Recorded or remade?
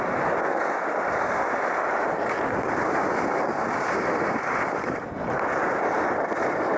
recorded